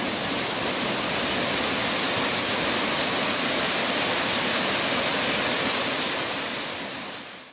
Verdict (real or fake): real